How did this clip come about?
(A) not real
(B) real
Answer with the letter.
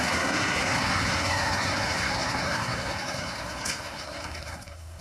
A